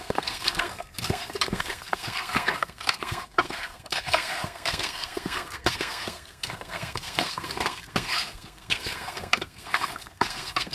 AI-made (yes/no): yes